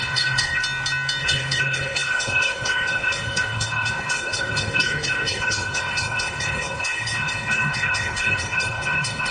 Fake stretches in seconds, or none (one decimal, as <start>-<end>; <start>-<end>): 0.0-0.6; 1.2-9.3